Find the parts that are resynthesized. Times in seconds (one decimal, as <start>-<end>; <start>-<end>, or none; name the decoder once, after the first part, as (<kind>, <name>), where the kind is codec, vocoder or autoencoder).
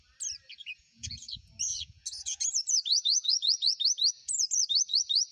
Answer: 0.6-1.5 (vocoder, Vocos); 2.9-3.7